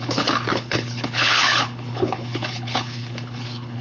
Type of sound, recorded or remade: remade